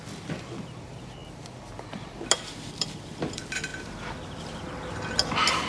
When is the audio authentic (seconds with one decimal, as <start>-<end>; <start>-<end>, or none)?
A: 0.0-5.7